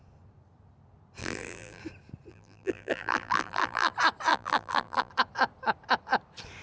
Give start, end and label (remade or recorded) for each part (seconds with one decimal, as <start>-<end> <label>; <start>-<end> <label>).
0.0-1.2 recorded; 1.2-1.8 remade; 1.8-2.3 recorded; 2.3-3.9 remade; 3.9-4.3 recorded; 4.3-5.1 remade; 5.1-6.6 recorded